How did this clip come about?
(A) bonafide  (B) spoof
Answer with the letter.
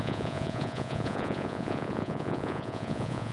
B